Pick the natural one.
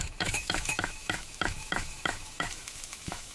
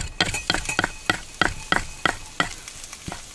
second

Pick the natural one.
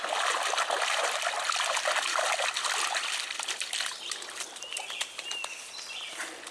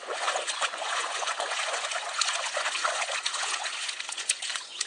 first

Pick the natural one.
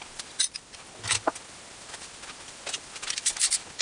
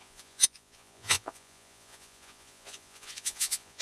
first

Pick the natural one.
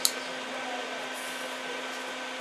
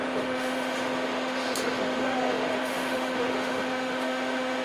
first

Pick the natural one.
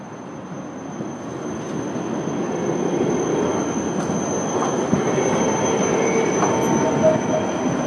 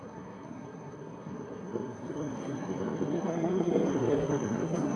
first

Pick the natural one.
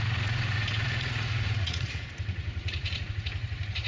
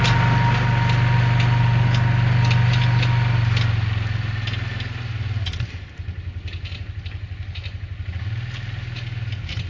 second